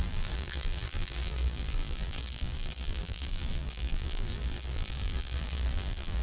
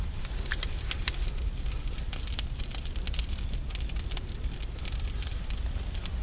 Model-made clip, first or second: first